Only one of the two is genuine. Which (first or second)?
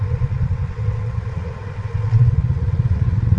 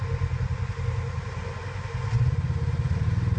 second